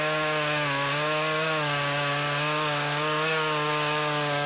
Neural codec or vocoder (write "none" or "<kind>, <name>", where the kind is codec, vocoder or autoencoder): codec, DAC